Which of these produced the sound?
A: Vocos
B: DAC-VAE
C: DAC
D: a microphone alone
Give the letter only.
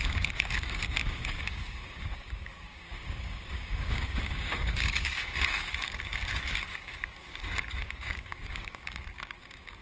C